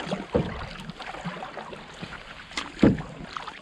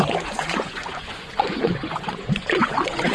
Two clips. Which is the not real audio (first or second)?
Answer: second